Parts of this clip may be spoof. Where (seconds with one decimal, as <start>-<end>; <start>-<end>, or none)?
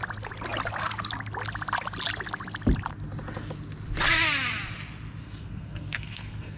5.2-6.6